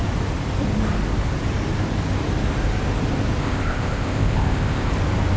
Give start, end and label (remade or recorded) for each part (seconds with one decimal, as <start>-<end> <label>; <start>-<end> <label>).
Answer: 0.0-3.4 recorded; 3.4-4.9 remade; 4.9-5.4 recorded